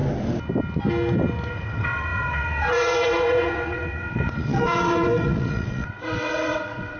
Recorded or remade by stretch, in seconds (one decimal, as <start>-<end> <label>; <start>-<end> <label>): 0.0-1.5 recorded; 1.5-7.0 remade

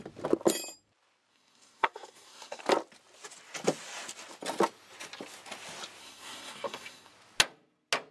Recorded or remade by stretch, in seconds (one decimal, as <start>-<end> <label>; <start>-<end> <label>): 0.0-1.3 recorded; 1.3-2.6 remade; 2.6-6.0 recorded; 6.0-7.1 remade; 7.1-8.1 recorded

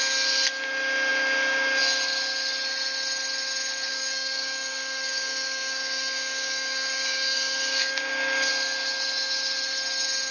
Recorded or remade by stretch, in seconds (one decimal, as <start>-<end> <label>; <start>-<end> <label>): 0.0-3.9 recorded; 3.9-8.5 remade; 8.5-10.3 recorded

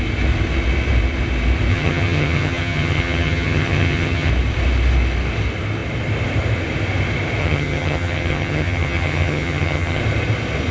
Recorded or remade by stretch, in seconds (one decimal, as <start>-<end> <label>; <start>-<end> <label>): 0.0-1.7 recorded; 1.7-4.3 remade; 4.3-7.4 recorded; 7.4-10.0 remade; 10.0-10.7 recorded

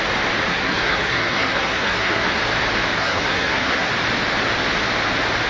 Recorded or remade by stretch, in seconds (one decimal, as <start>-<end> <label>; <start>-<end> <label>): 0.0-0.5 recorded; 0.5-2.4 remade; 2.4-3.0 recorded; 3.0-3.9 remade; 3.9-5.5 recorded

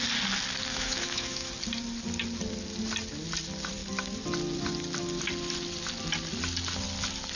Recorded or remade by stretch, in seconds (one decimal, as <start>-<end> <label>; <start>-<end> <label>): 0.0-0.7 recorded; 0.7-1.5 remade; 1.5-7.4 recorded

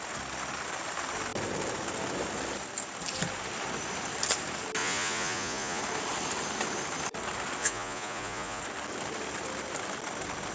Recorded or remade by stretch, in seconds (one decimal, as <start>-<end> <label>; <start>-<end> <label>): 0.0-4.8 recorded; 4.8-5.8 remade; 5.8-7.6 recorded; 7.6-8.6 remade; 8.6-10.5 recorded